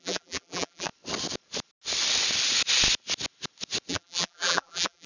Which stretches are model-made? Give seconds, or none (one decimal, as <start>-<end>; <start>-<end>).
0.0-0.9; 3.9-5.1